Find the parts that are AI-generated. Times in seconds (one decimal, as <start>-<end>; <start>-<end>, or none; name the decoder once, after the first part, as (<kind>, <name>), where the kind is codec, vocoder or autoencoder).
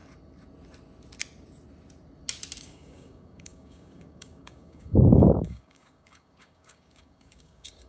2.6-7.9 (codec, DAC)